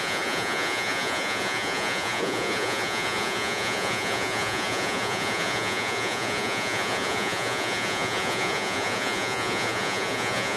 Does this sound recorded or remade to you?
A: remade